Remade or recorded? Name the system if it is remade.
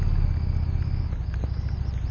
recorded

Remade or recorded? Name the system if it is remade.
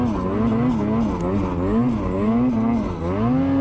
recorded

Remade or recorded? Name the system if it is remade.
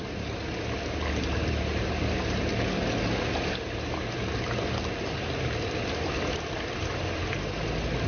recorded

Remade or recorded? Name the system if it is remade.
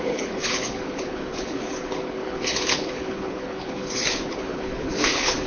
remade, codec, HILCodec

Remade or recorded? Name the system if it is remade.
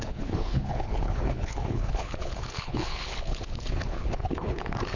remade, codec, HILCodec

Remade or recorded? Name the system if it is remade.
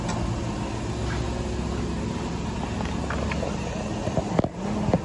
recorded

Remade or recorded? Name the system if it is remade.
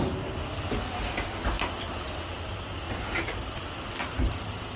recorded